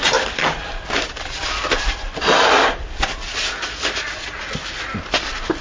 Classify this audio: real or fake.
real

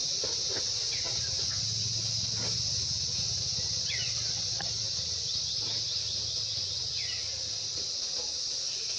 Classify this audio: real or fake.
real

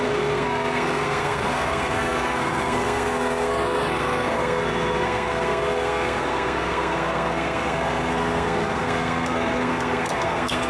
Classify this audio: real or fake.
fake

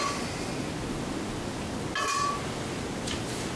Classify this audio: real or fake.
real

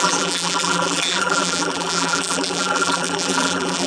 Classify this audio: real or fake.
fake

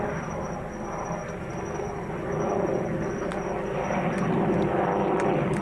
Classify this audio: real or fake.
real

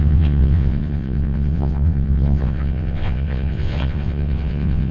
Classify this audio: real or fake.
fake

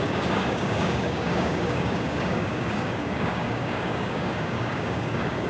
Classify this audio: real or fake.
fake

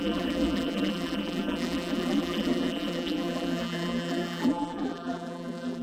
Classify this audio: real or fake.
fake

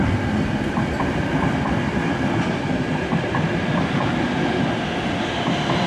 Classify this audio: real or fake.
real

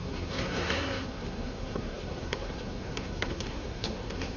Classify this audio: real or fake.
fake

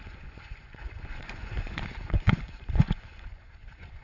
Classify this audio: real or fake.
fake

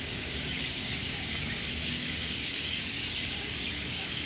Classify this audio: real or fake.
fake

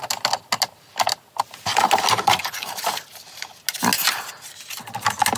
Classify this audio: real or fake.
real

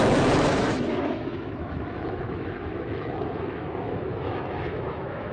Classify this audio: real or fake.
fake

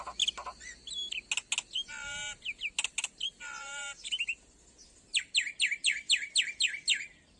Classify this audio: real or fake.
real